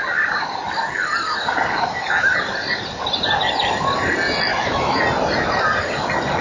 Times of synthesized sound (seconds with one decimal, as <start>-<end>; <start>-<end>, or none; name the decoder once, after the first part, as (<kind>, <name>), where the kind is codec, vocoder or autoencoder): 4.5-5.0 (autoencoder, DAC-VAE)